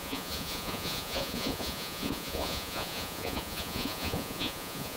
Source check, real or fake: fake